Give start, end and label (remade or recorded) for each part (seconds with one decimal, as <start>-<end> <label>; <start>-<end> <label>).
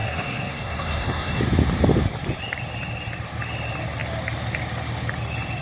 0.0-1.4 remade; 1.4-5.6 recorded